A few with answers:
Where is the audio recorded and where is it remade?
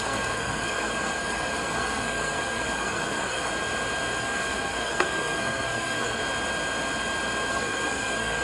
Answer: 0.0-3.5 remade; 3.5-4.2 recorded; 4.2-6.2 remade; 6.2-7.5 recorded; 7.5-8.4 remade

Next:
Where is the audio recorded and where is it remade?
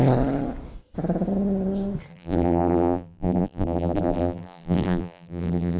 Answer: 0.0-2.1 recorded; 2.1-5.8 remade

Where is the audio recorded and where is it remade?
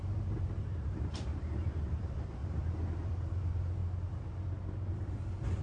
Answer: 0.0-2.4 remade; 2.4-3.1 recorded; 3.1-3.8 remade; 3.8-4.9 recorded; 4.9-5.6 remade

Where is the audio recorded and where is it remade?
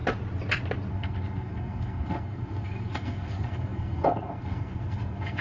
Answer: 0.0-0.9 recorded; 0.9-5.4 remade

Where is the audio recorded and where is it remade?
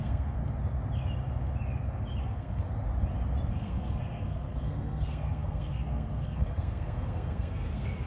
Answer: 0.0-0.4 remade; 0.4-2.2 recorded; 2.2-2.6 remade; 2.6-3.5 recorded; 3.5-8.1 remade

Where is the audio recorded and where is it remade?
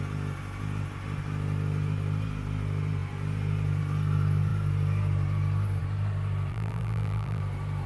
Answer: 0.0-6.5 recorded; 6.5-7.4 remade; 7.4-7.9 recorded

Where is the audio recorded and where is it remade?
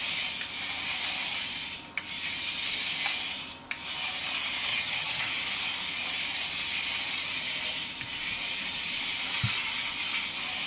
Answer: 0.0-4.7 recorded; 4.7-5.3 remade; 5.3-10.7 recorded